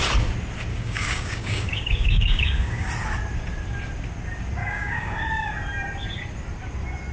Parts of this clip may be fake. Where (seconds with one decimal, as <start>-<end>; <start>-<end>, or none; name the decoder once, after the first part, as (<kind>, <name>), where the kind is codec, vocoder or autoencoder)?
0.7-2.9 (codec, DAC); 4.6-5.5